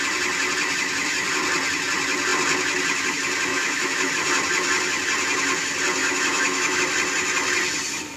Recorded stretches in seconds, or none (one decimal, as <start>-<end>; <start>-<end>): 0.0-3.5; 4.1-6.0; 6.8-8.2